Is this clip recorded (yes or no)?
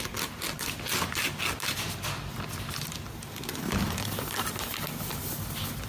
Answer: yes